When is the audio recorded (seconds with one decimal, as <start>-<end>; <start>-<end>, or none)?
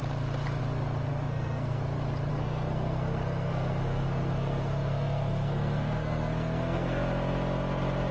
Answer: 0.0-1.1; 1.8-2.3; 7.0-8.1